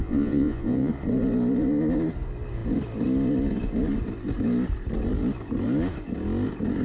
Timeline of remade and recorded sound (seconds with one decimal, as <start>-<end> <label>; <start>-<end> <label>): 0.0-0.9 remade; 0.9-6.8 recorded

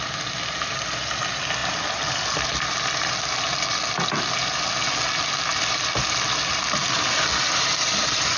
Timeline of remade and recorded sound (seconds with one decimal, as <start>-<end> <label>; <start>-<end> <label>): 0.0-8.4 recorded

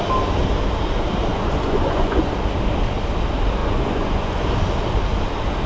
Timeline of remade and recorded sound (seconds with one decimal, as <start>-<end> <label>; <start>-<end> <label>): 0.0-1.3 recorded; 1.3-2.3 remade; 2.3-3.6 recorded; 3.6-4.4 remade; 4.4-5.7 recorded

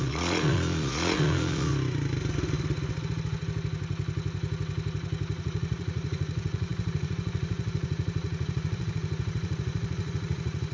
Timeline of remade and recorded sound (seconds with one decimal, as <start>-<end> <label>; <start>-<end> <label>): 0.0-1.7 remade; 1.7-5.4 recorded; 5.4-10.7 remade

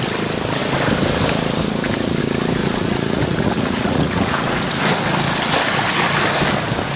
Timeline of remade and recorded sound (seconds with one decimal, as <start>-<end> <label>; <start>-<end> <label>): 0.0-2.6 recorded; 2.6-4.7 remade; 4.7-7.0 recorded